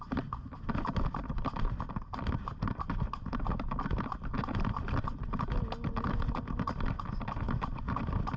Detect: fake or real real